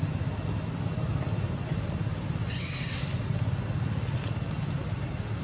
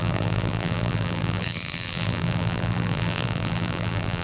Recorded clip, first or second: first